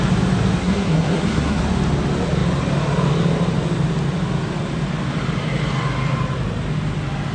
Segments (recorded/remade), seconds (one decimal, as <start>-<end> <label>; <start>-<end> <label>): 0.0-0.6 recorded; 0.6-1.6 remade; 1.6-7.3 recorded